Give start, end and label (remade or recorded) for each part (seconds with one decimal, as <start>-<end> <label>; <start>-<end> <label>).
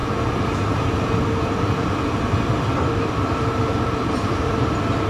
0.0-5.1 remade